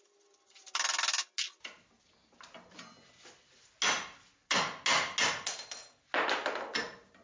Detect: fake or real real